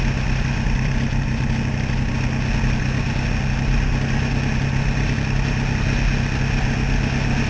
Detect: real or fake real